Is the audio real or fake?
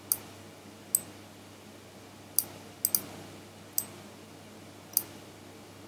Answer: real